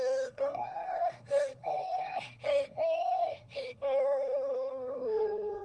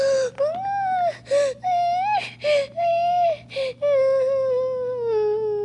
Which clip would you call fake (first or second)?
first